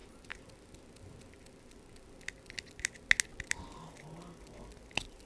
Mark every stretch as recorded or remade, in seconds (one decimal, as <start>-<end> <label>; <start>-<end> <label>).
0.0-5.3 recorded